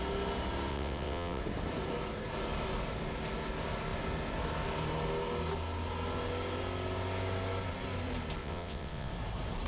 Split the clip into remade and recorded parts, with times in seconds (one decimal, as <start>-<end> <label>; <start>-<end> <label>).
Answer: 0.0-0.7 recorded; 0.7-1.4 remade; 1.4-8.4 recorded; 8.4-9.1 remade; 9.1-9.7 recorded